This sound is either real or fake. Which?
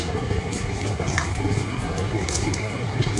fake